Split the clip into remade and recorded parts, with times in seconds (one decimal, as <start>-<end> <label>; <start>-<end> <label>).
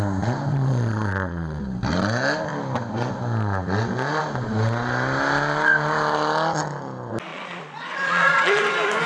0.0-0.5 recorded; 0.5-1.6 remade; 1.6-7.3 recorded; 7.3-8.6 remade; 8.6-9.1 recorded